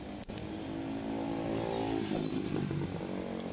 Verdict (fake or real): real